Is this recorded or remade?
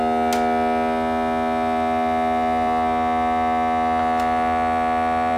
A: recorded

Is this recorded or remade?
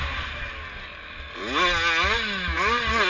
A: recorded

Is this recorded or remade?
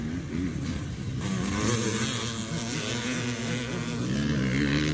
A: recorded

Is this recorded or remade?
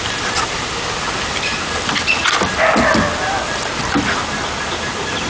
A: recorded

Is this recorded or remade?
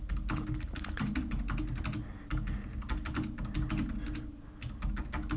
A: recorded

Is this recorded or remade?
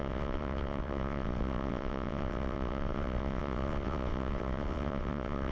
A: remade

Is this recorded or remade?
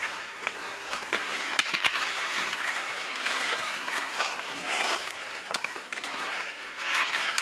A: remade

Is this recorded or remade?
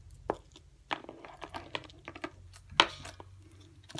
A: recorded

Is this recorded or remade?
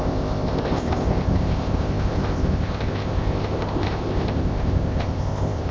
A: remade